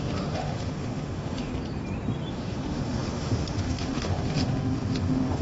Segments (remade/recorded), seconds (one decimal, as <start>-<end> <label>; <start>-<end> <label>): 0.0-1.5 remade; 1.5-2.3 recorded; 2.3-5.4 remade